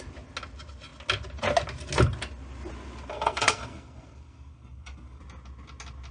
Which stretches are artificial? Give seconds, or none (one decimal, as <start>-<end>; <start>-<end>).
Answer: 3.1-5.2